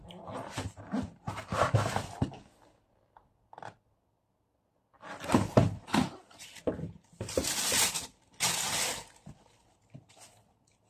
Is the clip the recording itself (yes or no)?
yes